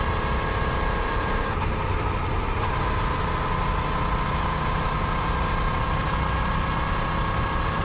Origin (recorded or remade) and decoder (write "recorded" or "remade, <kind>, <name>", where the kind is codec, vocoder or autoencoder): recorded